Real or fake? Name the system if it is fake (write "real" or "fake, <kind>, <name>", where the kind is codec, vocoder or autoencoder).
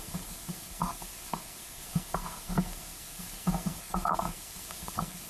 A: fake, codec, SNAC